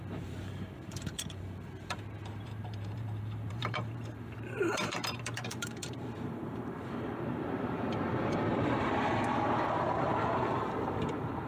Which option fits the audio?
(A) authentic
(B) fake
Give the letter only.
B